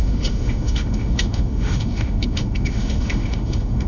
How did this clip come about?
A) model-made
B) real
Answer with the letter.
A